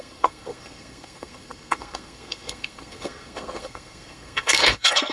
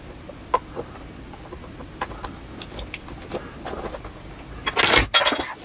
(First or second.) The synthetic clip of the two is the first